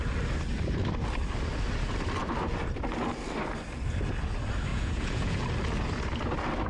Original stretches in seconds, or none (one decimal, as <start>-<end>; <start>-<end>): 0.0-4.7; 5.4-6.7